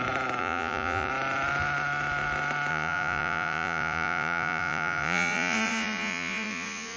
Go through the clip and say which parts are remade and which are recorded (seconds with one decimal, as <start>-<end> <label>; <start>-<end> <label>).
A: 0.0-0.4 recorded; 0.4-1.1 remade; 1.1-2.7 recorded; 2.7-7.0 remade